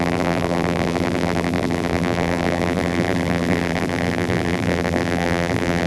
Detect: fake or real fake